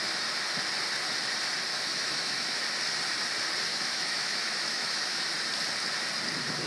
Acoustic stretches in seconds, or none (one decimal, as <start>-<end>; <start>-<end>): 0.0-1.7; 2.6-3.7; 5.3-6.7